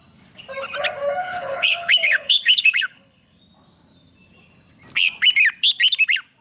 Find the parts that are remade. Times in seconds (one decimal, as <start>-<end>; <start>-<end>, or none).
1.2-3.4